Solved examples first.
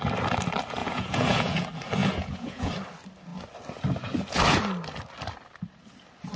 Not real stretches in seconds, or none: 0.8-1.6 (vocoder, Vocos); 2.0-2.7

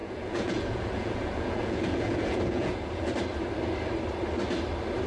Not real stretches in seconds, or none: 0.0-3.1 (vocoder, Vocos)

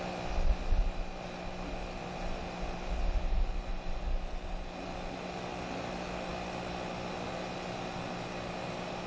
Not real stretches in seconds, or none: none